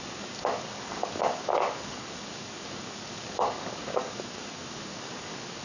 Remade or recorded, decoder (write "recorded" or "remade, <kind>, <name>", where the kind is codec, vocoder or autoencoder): remade, codec, DAC